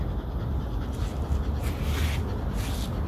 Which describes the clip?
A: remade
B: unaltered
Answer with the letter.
B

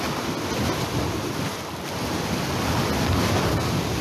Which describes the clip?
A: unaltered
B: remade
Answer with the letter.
A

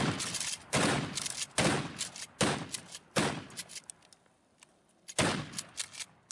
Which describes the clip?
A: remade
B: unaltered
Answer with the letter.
B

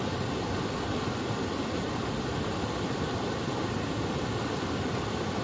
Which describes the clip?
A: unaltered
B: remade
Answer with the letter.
A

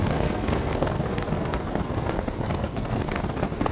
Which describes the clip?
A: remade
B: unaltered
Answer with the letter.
A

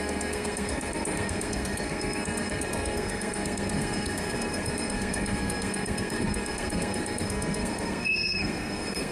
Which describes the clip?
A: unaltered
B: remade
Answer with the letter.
B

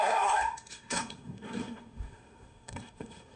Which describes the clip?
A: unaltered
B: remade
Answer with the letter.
B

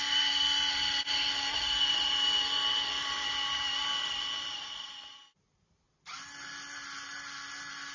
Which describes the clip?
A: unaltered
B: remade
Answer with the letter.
A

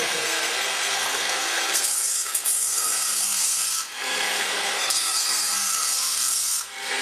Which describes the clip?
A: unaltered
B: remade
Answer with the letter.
B